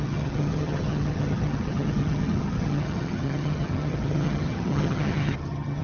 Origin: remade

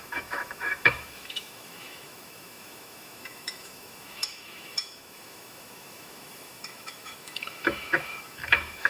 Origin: remade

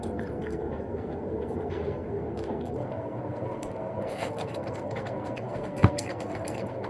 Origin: remade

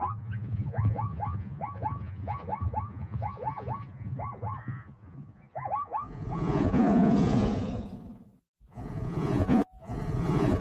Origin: remade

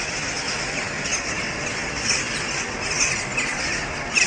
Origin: recorded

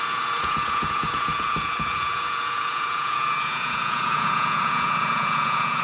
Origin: remade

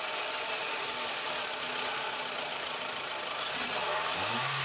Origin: recorded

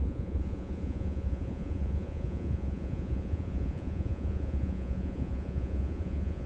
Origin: remade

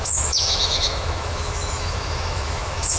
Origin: remade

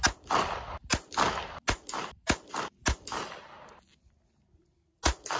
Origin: recorded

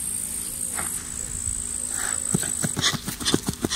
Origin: recorded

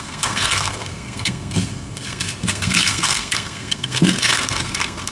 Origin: remade